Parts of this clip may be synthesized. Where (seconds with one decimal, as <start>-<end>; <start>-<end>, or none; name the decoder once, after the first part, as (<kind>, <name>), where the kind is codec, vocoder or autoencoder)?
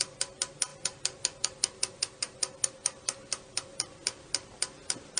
none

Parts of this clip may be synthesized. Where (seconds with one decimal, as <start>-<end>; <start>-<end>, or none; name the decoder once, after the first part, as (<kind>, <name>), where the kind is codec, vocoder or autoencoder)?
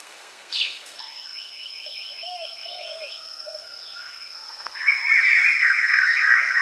0.0-5.0 (codec, SNAC); 5.6-6.6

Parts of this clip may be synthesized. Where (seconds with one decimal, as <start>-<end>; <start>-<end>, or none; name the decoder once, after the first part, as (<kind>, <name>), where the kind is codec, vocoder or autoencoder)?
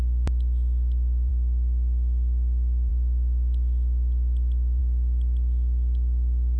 none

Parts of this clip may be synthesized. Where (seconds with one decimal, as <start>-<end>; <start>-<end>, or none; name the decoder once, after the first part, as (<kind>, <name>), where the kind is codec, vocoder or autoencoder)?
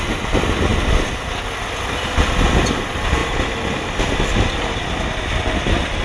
none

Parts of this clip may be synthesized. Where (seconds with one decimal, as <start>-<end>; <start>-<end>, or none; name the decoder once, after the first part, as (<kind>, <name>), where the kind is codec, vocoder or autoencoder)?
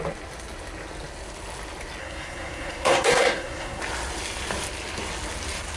2.0-3.8 (codec, SNAC)